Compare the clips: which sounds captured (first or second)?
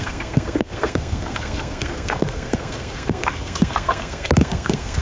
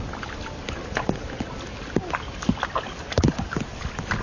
second